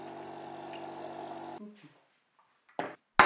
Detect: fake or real real